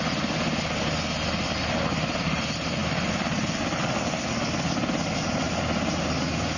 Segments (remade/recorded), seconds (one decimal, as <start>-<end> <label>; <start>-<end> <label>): 0.0-6.6 recorded